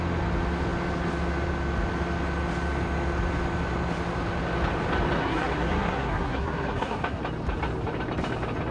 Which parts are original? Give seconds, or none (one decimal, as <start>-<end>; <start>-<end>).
0.0-5.2; 7.2-8.7